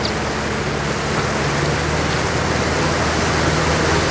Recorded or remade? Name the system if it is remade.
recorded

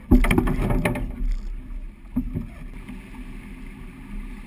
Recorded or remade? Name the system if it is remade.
recorded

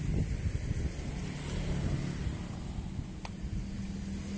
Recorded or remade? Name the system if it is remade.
recorded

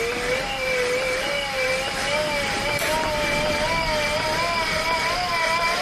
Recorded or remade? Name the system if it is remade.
recorded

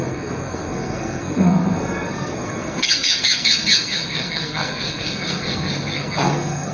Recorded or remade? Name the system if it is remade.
remade, codec, SNAC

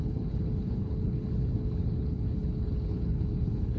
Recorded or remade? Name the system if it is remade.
remade, codec, HILCodec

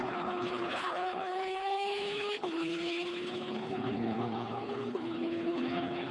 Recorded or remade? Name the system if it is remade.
remade, codec, HILCodec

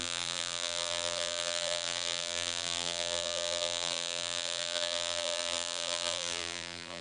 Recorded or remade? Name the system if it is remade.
remade, vocoder, BigVGAN v2